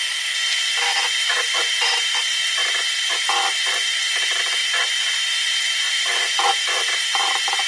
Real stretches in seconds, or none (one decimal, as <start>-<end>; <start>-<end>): 4.6-5.3